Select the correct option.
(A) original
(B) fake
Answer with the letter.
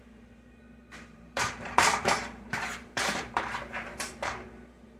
B